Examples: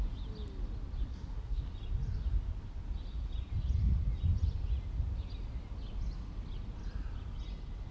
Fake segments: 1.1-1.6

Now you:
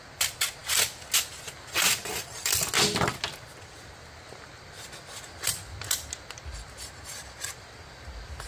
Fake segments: none

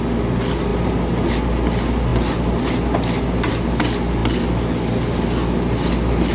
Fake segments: none